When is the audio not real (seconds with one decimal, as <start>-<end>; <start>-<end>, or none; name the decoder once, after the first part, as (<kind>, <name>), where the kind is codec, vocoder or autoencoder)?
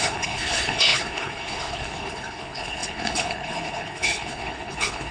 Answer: 0.0-5.1 (codec, HILCodec)